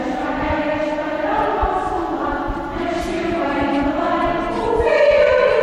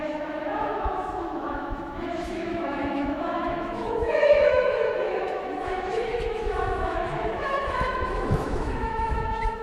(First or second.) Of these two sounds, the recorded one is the first